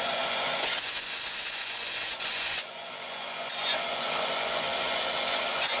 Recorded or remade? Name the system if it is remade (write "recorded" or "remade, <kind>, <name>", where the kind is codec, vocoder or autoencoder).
remade, vocoder, Vocos